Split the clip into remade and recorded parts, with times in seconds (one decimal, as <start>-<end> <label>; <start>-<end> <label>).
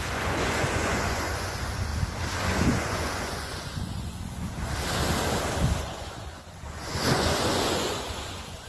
0.0-1.9 remade; 1.9-2.4 recorded; 2.4-4.7 remade; 4.7-5.8 recorded; 5.8-8.7 remade